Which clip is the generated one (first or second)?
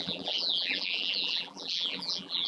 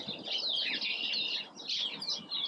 first